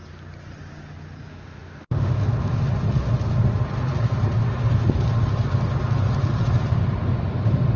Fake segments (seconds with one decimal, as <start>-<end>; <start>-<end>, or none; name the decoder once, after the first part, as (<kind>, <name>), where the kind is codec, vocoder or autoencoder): 1.3-2.2 (autoencoder, DAC-VAE)